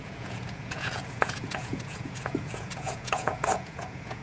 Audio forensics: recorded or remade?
remade